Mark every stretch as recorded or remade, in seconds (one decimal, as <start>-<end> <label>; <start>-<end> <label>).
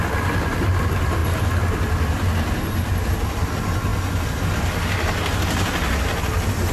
0.0-6.7 recorded